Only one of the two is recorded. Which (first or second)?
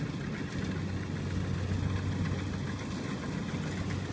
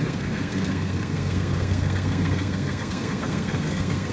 first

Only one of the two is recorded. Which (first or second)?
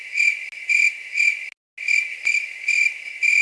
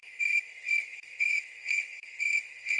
first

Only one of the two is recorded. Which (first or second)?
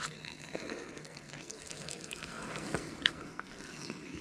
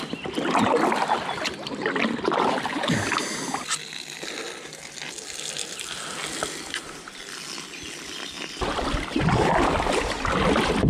second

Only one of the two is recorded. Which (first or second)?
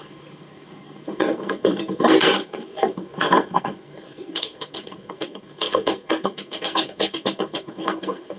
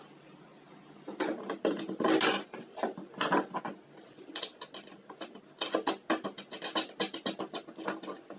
second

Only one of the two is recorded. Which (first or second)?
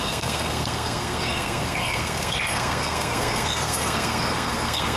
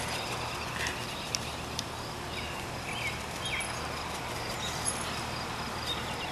second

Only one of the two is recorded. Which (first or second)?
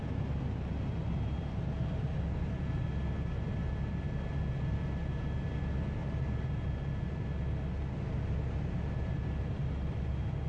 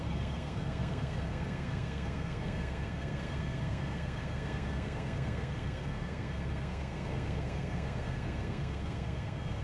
first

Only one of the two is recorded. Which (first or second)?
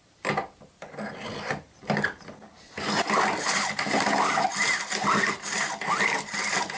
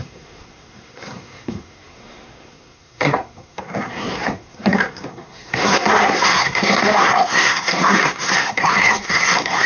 first